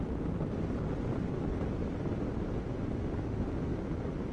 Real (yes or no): yes